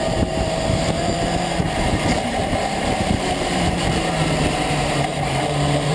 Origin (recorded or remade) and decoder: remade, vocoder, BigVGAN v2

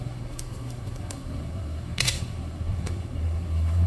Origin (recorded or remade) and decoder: remade, codec, SNAC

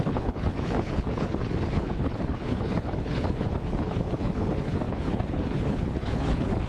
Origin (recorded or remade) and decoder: remade, codec, HILCodec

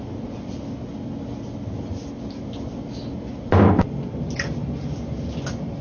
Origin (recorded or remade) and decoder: recorded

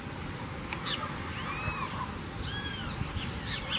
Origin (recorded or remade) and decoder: recorded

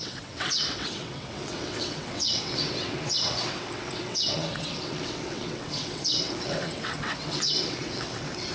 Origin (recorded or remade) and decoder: remade, vocoder, WaveNeXt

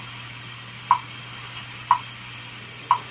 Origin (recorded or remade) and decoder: recorded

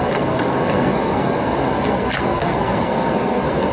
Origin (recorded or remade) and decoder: remade, codec, SNAC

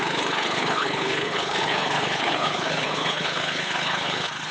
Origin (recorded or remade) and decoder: remade, codec, HILCodec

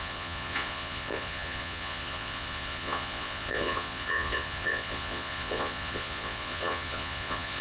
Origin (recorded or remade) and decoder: remade, vocoder, Vocos